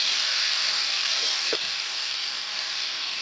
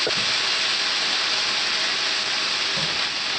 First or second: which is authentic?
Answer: second